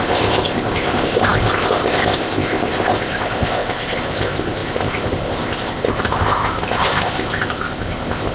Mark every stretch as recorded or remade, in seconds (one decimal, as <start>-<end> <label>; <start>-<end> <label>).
0.0-8.3 remade